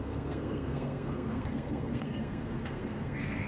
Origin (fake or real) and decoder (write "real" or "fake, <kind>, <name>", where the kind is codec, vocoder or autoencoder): fake, codec, SNAC